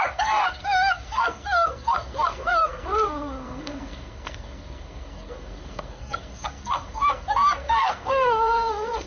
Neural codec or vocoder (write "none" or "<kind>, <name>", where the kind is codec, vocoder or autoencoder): codec, SNAC